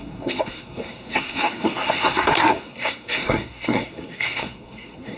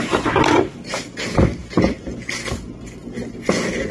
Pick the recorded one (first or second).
second